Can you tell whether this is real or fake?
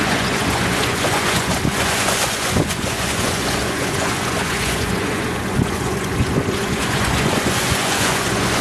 fake